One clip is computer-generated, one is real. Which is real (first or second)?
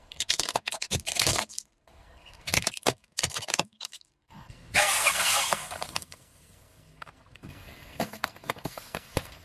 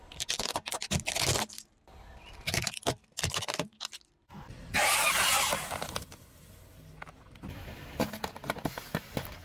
second